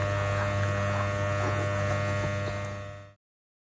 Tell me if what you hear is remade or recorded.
recorded